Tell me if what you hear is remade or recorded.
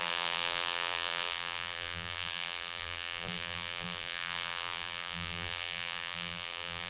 remade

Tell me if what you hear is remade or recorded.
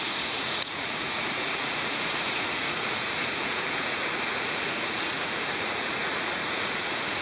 remade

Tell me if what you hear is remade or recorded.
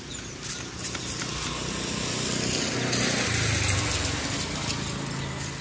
recorded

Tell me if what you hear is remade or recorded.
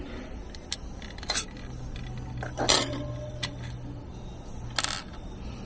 recorded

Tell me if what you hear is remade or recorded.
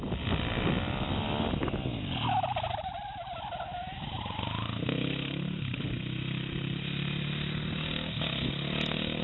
recorded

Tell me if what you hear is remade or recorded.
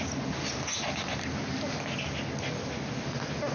recorded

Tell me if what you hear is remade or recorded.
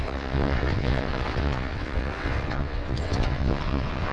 remade